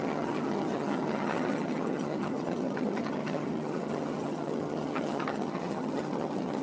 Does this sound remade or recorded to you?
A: remade